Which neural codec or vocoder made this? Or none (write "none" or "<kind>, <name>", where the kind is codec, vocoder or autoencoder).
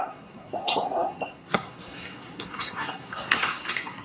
codec, SNAC